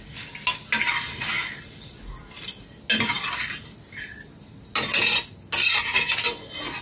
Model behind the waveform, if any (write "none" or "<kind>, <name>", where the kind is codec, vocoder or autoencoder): none